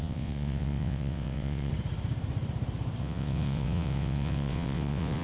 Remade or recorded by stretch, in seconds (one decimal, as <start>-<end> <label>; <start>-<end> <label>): 0.0-1.7 remade; 1.7-3.0 recorded; 3.0-5.2 remade